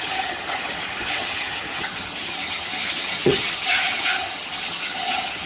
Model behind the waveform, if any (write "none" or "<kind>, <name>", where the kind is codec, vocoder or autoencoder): vocoder, HiFi-GAN